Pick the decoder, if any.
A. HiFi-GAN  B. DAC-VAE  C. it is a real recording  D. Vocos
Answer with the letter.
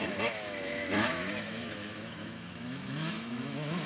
B